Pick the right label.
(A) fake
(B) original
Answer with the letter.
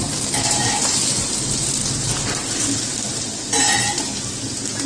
B